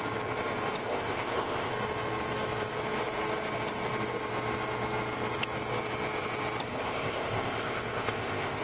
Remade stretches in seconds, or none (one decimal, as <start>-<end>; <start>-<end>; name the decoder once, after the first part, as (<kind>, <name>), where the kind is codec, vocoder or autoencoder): 0.8-1.7 (codec, ZipCodec); 6.7-8.6